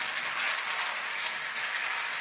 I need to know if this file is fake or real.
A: real